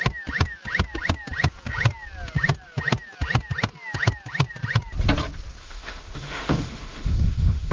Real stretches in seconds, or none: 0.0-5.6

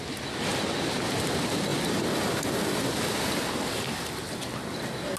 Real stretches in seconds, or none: 0.0-5.2

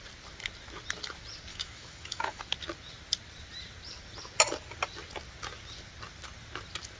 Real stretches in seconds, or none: 0.0-1.5; 2.4-7.0

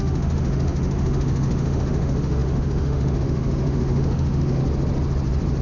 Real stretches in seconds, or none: 4.6-5.6

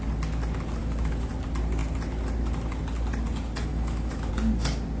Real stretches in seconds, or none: 0.0-0.8; 1.3-3.7; 4.3-5.0